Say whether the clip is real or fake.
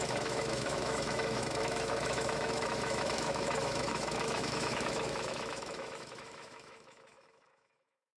fake